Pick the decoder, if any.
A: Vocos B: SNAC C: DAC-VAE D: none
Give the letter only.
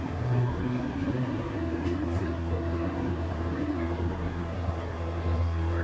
B